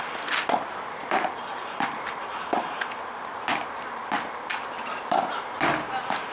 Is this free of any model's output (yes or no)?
yes